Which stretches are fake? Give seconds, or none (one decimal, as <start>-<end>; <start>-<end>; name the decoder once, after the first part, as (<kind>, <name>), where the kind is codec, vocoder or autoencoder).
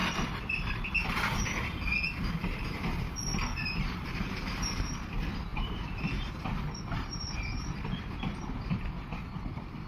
3.3-4.9 (vocoder, BigVGAN v2); 5.5-8.2